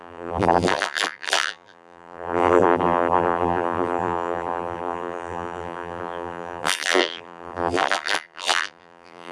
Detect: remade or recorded remade